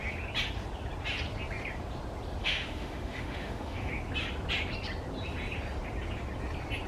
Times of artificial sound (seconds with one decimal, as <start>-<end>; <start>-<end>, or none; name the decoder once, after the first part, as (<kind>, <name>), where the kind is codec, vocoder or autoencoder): 2.4-3.9 (autoencoder, DAC-VAE)